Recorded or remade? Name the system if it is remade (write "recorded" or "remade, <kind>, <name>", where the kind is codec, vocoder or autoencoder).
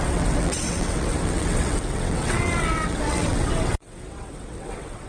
remade, vocoder, WaveNeXt